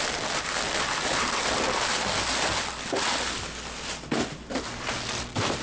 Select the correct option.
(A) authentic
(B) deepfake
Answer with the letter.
A